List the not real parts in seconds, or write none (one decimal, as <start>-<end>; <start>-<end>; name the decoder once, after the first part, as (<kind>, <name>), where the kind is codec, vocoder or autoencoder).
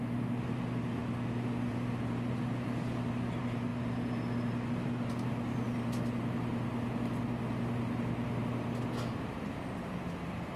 0.0-1.0 (vocoder, BigVGAN v2); 1.7-3.7; 4.7-5.3